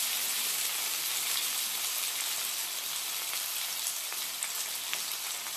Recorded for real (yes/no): yes